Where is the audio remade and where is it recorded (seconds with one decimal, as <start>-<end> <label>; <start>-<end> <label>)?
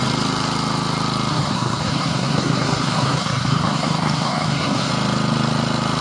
0.0-1.3 recorded; 1.3-4.9 remade; 4.9-6.0 recorded